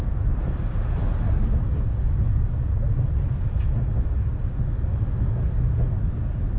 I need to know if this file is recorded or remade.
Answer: recorded